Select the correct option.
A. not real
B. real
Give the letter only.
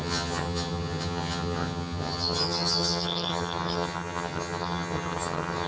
A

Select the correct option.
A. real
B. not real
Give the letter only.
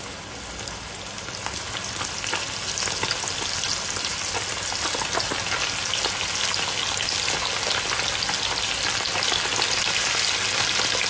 A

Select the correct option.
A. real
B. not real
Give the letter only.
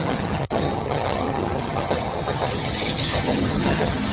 B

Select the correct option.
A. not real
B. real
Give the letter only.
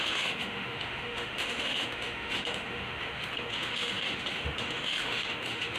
A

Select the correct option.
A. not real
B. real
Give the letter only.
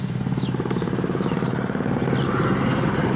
B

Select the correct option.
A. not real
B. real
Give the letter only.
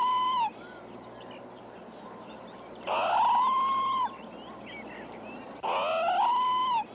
B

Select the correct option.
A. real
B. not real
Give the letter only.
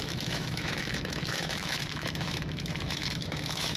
B